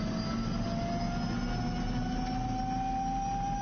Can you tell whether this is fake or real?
real